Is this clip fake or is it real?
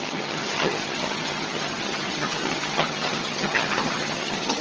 fake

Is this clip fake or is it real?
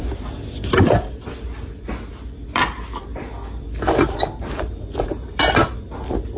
real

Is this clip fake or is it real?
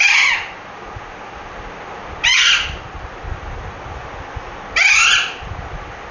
real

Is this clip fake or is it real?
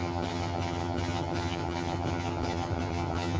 fake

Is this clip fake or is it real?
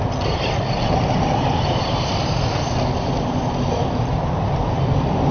real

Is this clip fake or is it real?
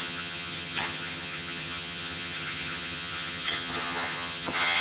fake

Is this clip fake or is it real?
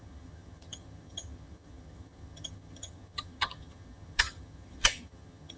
fake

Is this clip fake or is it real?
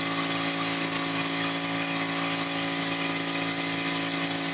real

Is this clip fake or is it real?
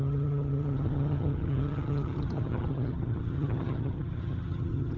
fake